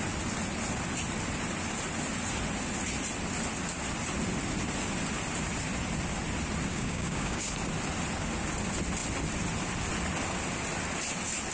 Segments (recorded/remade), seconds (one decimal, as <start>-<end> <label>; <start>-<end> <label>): 0.0-6.7 recorded; 6.7-7.5 remade; 7.5-11.5 recorded